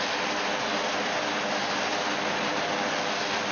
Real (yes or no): yes